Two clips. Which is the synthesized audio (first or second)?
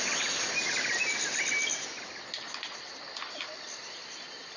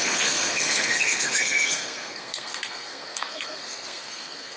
second